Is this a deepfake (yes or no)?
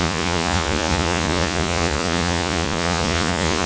yes